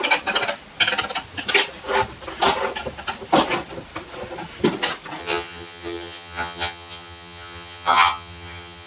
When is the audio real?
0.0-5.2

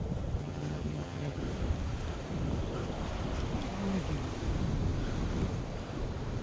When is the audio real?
0.0-0.4; 1.4-6.4

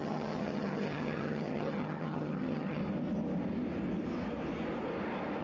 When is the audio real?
2.8-5.4

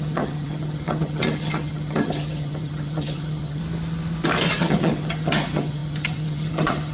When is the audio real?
3.6-4.6